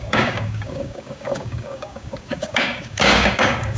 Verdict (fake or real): fake